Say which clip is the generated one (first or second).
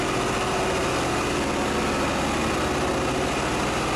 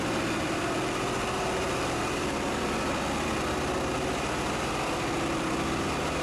second